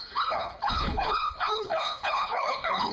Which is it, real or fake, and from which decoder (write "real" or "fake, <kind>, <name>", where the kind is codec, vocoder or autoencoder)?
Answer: fake, codec, HILCodec